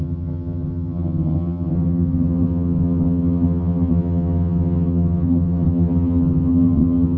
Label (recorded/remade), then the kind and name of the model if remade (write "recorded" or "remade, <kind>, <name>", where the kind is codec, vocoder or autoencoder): remade, vocoder, HiFi-GAN